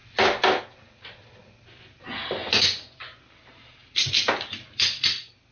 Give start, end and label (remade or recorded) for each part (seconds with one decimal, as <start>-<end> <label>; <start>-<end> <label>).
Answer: 0.0-2.4 recorded; 2.4-3.2 remade; 3.2-5.5 recorded